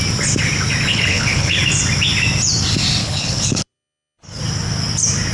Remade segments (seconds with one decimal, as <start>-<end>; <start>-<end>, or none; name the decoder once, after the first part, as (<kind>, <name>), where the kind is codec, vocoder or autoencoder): 0.9-1.6 (codec, HILCodec); 3.0-4.4